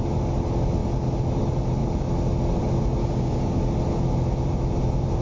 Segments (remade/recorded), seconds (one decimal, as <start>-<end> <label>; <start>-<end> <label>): 0.0-3.0 recorded; 3.0-3.6 remade; 3.6-5.2 recorded